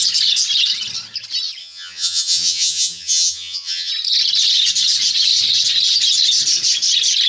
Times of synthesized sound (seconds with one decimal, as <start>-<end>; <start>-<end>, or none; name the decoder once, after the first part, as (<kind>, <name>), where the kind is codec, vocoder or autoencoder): 1.6-3.9 (vocoder, HiFi-GAN)